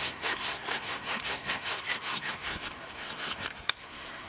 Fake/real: fake